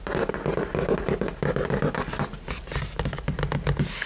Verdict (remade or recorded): recorded